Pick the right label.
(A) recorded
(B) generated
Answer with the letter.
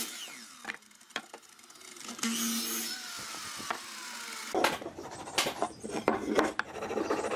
A